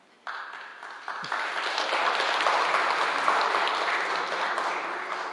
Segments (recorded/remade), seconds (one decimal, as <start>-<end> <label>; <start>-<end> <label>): 0.0-5.3 recorded

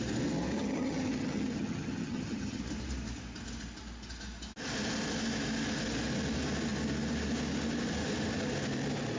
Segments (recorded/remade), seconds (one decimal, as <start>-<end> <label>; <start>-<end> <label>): 0.0-0.6 recorded; 0.6-2.6 remade; 2.6-9.2 recorded

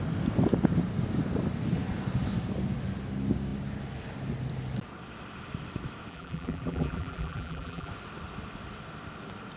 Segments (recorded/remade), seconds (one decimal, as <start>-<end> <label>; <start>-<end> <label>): 0.0-6.1 recorded; 6.1-7.9 remade; 7.9-9.6 recorded

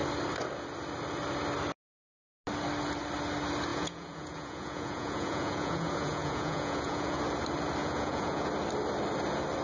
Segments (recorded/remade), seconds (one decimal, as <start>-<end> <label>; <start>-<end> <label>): 0.0-3.7 recorded; 3.7-7.2 remade; 7.2-7.8 recorded; 7.8-8.5 remade; 8.5-9.6 recorded